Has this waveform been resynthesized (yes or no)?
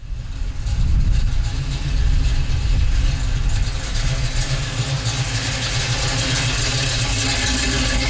no